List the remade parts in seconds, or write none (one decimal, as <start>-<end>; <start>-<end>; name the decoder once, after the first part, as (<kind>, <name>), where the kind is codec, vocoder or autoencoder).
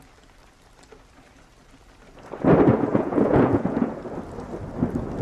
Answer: 2.7-4.0 (vocoder, Vocos)